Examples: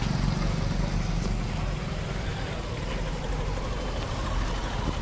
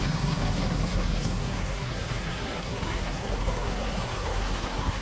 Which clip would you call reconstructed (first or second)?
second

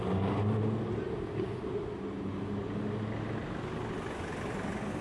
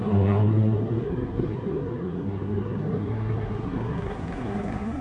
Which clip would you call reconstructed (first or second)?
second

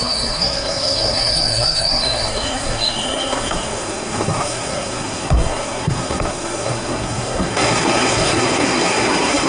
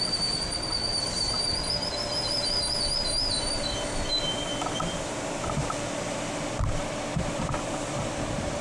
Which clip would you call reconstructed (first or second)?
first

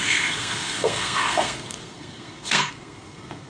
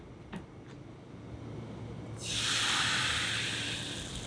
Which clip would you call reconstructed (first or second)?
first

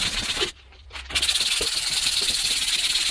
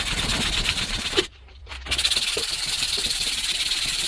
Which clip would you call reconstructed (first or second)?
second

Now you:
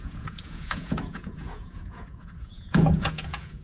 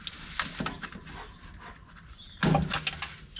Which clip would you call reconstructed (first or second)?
first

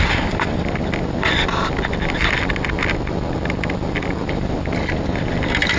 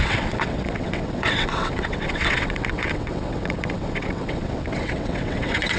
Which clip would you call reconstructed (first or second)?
second